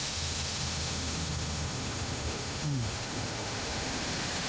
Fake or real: fake